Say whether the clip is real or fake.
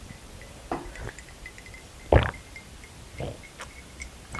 fake